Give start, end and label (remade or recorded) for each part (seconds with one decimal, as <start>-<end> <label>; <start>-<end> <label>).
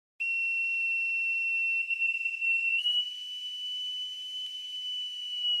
0.0-1.8 recorded; 1.8-3.0 remade; 3.0-5.6 recorded